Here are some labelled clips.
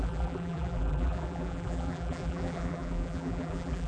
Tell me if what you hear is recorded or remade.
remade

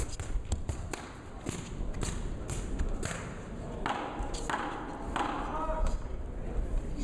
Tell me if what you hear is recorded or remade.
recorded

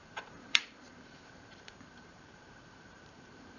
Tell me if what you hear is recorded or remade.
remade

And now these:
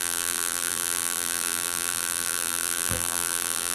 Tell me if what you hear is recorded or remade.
remade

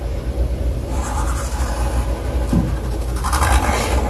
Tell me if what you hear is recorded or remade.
remade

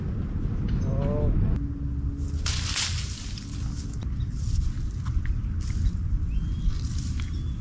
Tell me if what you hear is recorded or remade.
recorded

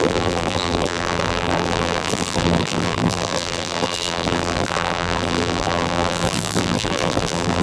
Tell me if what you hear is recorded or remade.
remade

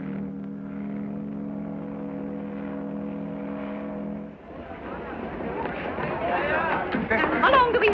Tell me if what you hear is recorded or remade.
recorded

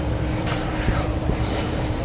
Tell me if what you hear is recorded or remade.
remade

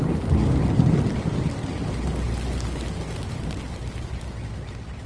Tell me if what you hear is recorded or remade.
recorded